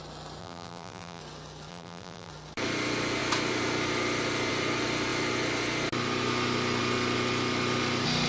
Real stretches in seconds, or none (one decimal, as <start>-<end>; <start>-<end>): 0.0-0.4; 1.2-1.7; 2.3-8.3

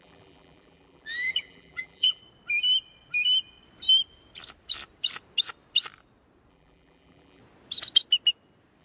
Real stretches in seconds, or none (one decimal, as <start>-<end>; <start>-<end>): 2.2-6.5; 7.4-8.8